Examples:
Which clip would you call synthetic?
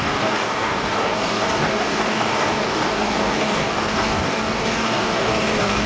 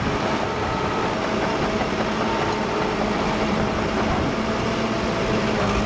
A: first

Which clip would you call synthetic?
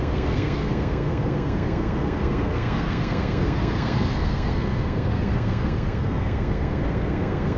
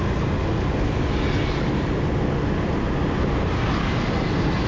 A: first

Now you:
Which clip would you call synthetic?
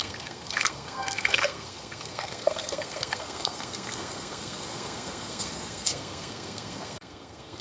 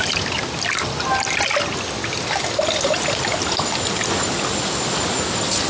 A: first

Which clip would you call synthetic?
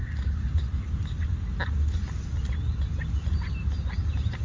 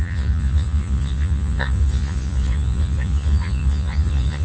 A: second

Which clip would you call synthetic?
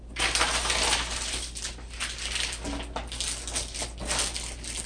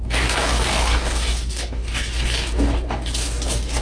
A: second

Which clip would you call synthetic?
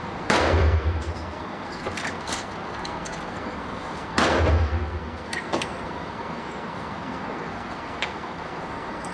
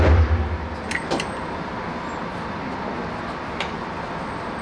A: first